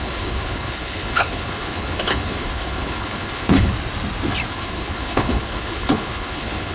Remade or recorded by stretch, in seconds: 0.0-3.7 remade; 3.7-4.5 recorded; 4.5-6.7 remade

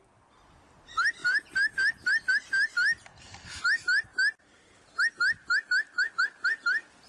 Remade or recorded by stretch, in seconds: 0.0-3.1 recorded; 3.1-3.6 remade; 3.6-7.1 recorded

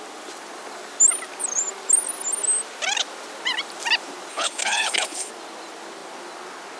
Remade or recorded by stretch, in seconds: 0.0-4.3 recorded; 4.3-5.3 remade; 5.3-6.8 recorded

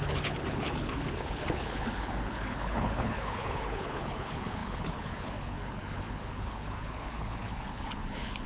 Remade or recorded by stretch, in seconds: 0.0-8.5 remade

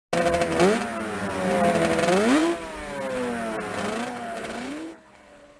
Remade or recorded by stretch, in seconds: 0.0-4.1 recorded; 4.1-5.6 remade

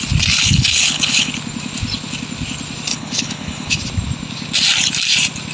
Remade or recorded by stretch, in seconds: 0.0-0.4 recorded; 0.4-1.3 remade; 1.3-2.9 recorded; 2.9-3.8 remade; 3.8-5.5 recorded